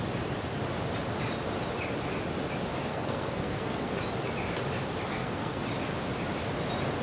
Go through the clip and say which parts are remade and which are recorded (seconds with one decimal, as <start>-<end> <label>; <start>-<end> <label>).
0.0-2.9 recorded; 2.9-4.0 remade; 4.0-5.1 recorded; 5.1-5.6 remade; 5.6-7.0 recorded

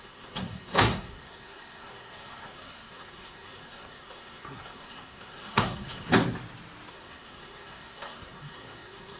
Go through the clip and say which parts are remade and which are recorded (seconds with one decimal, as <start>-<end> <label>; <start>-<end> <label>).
0.0-6.1 remade; 6.1-6.9 recorded; 6.9-9.2 remade